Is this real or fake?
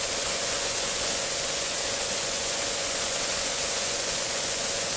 fake